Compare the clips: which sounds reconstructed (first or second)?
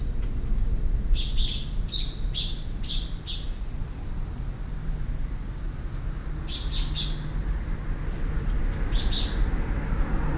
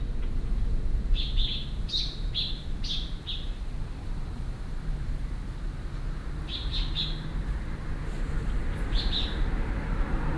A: second